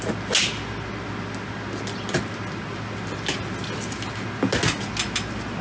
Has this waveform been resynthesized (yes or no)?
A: no